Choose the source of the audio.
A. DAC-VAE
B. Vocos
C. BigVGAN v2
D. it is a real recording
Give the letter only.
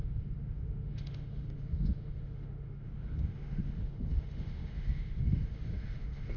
A